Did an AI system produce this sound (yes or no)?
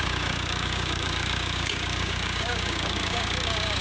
yes